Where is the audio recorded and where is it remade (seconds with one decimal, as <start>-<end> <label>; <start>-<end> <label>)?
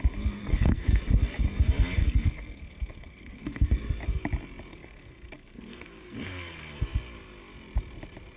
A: 0.0-0.4 recorded; 0.4-1.0 remade; 1.0-2.0 recorded; 2.0-3.8 remade; 3.8-4.7 recorded; 4.7-6.8 remade; 6.8-8.4 recorded